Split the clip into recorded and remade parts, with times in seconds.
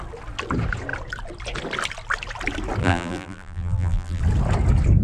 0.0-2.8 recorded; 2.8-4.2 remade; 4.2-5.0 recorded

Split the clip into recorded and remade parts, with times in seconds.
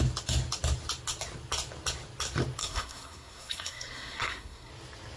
0.0-2.6 recorded; 2.6-4.7 remade; 4.7-5.2 recorded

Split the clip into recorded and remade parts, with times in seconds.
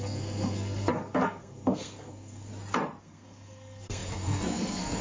0.0-2.5 remade; 2.5-3.0 recorded; 3.0-5.0 remade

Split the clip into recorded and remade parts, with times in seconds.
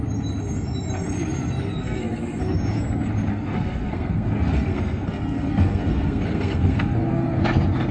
0.0-1.8 recorded; 1.8-2.4 remade; 2.4-3.3 recorded; 3.3-7.4 remade; 7.4-7.9 recorded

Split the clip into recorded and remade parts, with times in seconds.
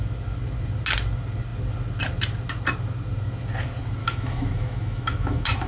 0.0-4.0 recorded; 4.0-5.7 remade